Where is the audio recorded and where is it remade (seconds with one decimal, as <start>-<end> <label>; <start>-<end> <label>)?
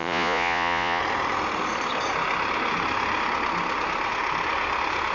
0.0-1.0 remade; 1.0-5.1 recorded